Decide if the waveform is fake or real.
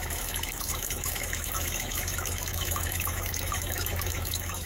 fake